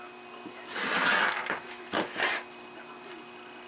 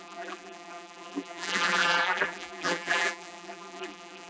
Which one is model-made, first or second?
second